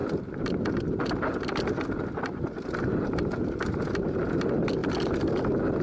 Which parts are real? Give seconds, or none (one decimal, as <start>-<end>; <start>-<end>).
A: 0.0-5.8